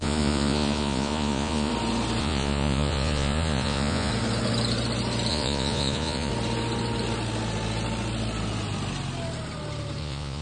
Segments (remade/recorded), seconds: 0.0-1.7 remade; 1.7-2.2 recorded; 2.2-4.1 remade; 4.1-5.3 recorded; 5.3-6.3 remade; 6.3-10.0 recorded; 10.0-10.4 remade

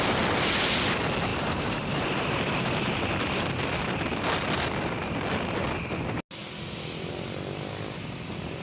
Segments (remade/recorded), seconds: 0.0-1.3 recorded; 1.3-3.1 remade; 3.1-8.6 recorded

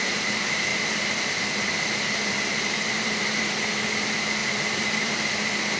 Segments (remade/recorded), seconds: 0.0-0.7 recorded; 0.7-3.5 remade; 3.5-4.4 recorded; 4.4-5.8 remade

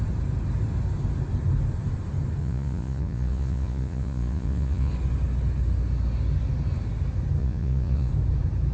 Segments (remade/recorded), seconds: 0.0-2.4 recorded; 2.4-4.9 remade; 4.9-7.4 recorded; 7.4-8.1 remade; 8.1-8.7 recorded

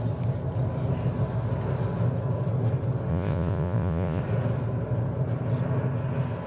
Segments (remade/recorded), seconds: 0.0-3.1 recorded; 3.1-4.2 remade; 4.2-6.5 recorded